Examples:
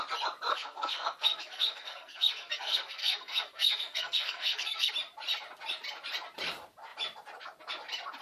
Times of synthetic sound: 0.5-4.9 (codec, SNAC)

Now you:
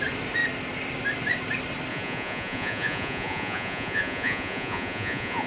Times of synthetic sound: 1.9-5.5 (vocoder, Vocos)

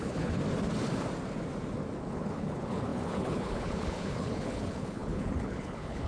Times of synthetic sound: 0.0-0.4 (codec, HILCodec); 2.0-6.1

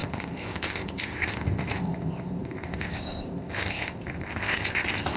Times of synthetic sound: 0.0-5.2 (codec, ZipCodec)

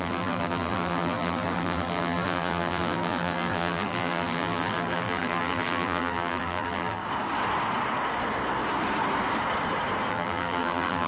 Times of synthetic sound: 0.0-7.0 (vocoder, BigVGAN v2); 10.1-11.1

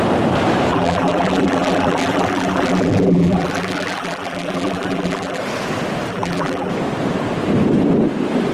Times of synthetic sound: 0.7-5.4 (vocoder, BigVGAN v2); 6.1-6.7

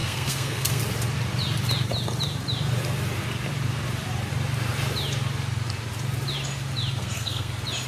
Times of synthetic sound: 0.0-0.8 (codec, SNAC); 7.0-7.5